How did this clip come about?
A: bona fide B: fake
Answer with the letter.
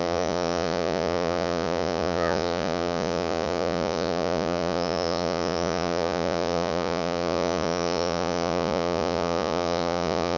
B